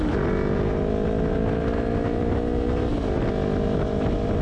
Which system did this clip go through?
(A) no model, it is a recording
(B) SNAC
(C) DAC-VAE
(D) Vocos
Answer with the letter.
A